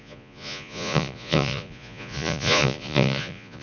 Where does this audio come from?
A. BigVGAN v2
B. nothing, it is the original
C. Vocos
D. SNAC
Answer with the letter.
C